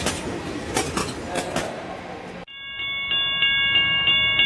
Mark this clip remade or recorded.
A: recorded